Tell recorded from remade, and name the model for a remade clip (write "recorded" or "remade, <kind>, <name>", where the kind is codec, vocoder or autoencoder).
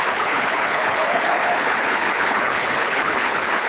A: remade, codec, HILCodec